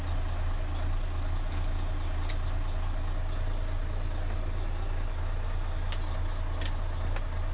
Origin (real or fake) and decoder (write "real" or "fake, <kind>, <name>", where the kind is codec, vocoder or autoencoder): real